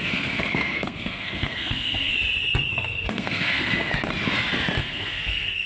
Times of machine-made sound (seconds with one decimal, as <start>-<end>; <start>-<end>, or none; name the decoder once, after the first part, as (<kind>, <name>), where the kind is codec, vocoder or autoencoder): 0.0-2.1 (codec, SNAC); 2.7-3.9; 4.8-5.7